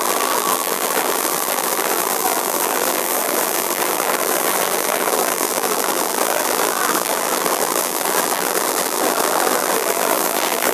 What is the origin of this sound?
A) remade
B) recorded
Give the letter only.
A